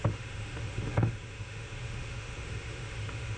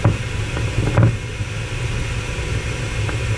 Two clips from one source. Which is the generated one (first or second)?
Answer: first